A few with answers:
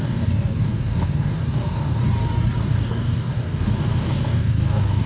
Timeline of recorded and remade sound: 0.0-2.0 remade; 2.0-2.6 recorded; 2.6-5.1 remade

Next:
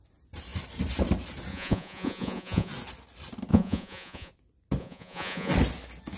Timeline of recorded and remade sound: 0.0-1.5 recorded; 1.5-2.7 remade; 2.7-3.5 recorded; 3.5-4.3 remade; 4.3-4.8 recorded; 4.8-5.5 remade; 5.5-6.2 recorded

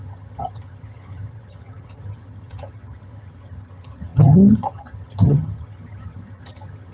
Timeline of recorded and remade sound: 0.0-6.9 remade

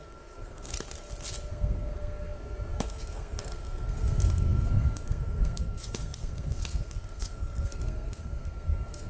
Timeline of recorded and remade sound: 0.0-0.7 remade; 0.7-1.5 recorded; 1.5-9.1 remade

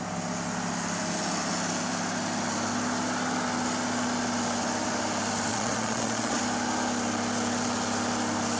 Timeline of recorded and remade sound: 0.0-5.5 recorded; 5.5-6.4 remade; 6.4-8.6 recorded

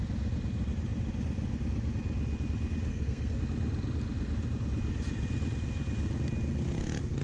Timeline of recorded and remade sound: 0.0-2.9 recorded; 2.9-3.4 remade; 3.4-7.2 recorded